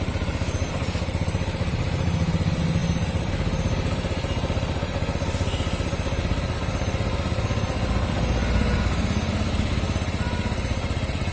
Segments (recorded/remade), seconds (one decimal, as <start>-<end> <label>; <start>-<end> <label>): 0.0-0.6 recorded; 0.6-1.7 remade; 1.7-2.8 recorded; 2.8-3.3 remade; 3.3-11.3 recorded